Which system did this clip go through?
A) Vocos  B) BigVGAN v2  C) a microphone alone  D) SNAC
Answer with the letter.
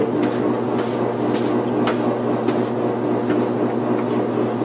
C